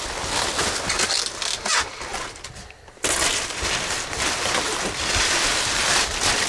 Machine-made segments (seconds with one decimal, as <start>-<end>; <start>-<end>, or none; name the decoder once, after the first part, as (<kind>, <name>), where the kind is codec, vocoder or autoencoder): 2.1-6.0 (vocoder, BigVGAN v2)